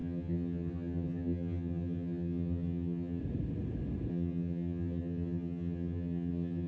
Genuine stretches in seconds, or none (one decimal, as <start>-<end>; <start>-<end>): 3.2-4.1